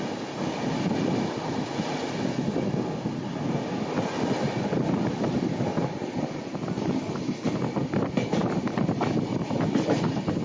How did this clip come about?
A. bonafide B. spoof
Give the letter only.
A